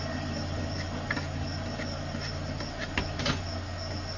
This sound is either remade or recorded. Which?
recorded